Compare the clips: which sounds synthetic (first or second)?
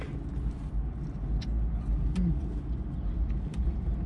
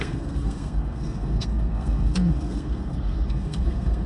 second